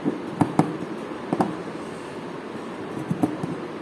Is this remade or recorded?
recorded